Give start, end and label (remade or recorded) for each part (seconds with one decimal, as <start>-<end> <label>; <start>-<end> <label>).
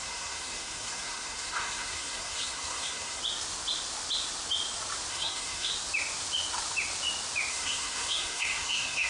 0.0-3.2 remade; 3.2-5.1 recorded; 5.1-5.7 remade; 5.7-7.5 recorded; 7.5-9.1 remade